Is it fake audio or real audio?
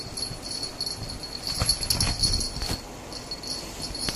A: real